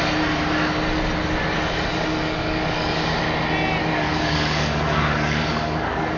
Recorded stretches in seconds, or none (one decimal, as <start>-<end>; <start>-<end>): 0.0-1.9; 3.2-3.8